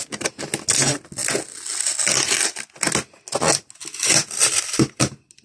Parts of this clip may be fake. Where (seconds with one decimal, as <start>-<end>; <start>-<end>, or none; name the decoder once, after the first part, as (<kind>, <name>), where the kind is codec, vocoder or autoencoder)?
none